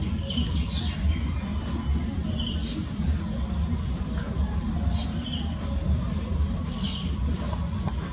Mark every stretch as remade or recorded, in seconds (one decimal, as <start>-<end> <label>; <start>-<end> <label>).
0.0-8.1 recorded